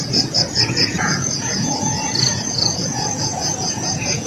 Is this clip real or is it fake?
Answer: fake